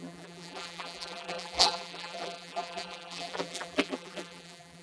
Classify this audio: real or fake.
fake